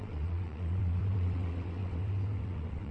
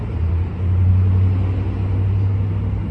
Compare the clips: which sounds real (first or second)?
second